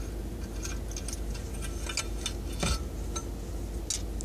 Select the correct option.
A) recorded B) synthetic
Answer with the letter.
A